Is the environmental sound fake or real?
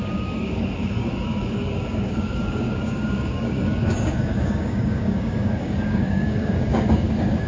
fake